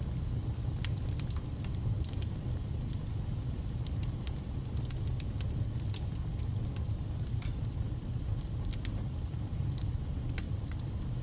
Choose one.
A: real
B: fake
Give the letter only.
A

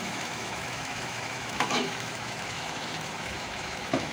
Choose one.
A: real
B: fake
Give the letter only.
B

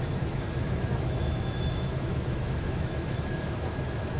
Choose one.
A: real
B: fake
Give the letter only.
B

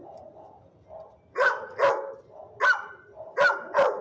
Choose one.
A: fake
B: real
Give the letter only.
B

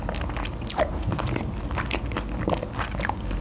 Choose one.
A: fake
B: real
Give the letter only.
B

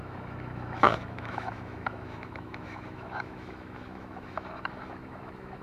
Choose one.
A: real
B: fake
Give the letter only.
B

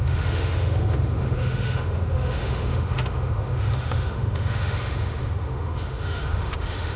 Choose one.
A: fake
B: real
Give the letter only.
A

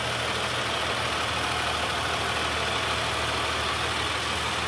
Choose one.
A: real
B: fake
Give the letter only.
A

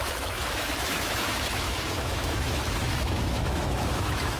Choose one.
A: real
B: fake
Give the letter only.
B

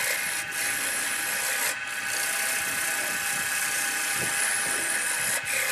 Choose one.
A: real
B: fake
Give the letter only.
A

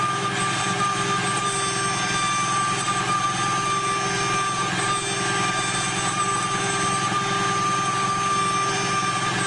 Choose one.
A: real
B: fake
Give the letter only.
A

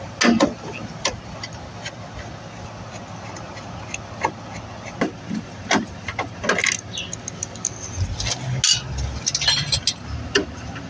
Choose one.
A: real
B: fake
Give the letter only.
A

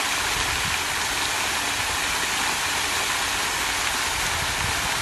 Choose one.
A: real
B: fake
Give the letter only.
A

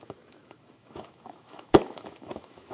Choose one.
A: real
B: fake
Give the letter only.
B